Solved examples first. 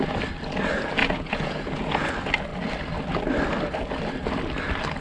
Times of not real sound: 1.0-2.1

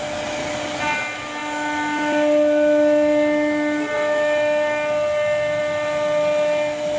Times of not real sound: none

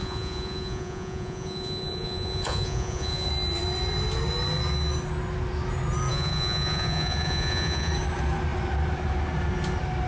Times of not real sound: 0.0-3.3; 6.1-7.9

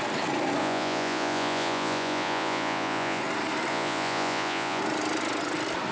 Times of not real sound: 0.6-3.2; 3.7-4.8